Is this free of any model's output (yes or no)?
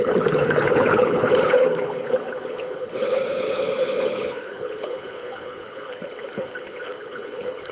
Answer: no